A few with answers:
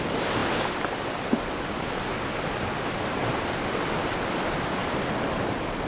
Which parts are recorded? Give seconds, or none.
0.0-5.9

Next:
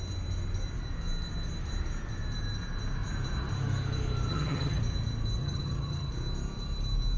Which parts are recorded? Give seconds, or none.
0.0-4.3; 4.8-5.4; 6.1-7.2